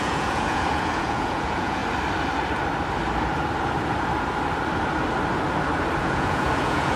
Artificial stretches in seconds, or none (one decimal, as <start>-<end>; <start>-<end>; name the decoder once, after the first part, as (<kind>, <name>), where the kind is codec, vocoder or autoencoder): 0.0-1.8 (vocoder, Vocos); 6.0-7.0